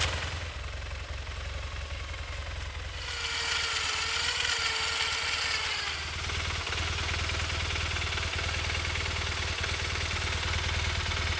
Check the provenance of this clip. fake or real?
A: real